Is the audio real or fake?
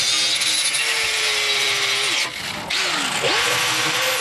real